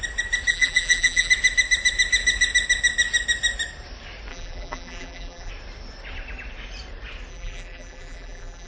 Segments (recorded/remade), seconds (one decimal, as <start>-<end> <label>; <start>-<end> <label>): 0.0-0.5 recorded; 0.5-1.3 remade; 1.3-4.3 recorded; 4.3-5.5 remade; 5.5-7.3 recorded; 7.3-8.7 remade